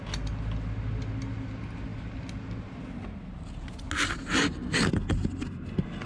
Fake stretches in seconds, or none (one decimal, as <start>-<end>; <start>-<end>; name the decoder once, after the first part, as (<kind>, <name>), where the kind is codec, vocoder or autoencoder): none